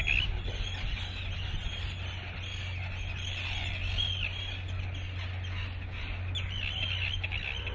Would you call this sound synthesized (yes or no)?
no